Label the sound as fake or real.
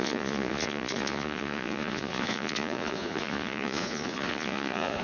fake